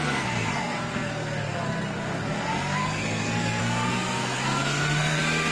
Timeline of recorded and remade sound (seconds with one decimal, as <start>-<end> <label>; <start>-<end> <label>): 0.0-5.5 remade